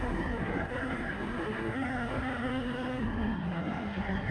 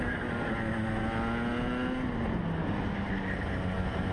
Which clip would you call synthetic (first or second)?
first